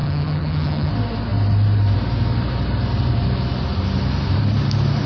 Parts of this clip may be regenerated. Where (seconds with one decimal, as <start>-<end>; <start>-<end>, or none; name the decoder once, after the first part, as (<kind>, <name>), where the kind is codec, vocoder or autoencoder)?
0.0-0.9 (vocoder, HiFi-GAN)